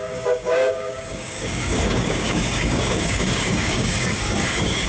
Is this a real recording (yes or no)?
no